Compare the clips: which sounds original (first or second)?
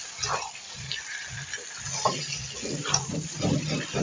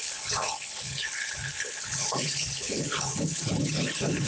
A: first